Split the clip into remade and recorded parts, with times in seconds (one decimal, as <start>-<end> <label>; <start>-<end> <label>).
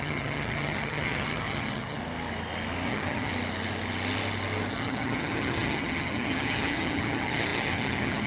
0.0-2.0 remade; 2.0-2.9 recorded; 2.9-3.3 remade; 3.3-4.7 recorded; 4.7-8.3 remade